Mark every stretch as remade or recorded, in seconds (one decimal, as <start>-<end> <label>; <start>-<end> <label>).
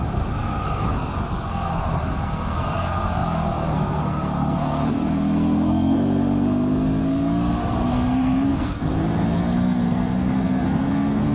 0.0-11.3 remade